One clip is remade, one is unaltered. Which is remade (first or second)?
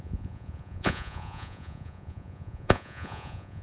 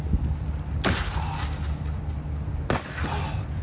first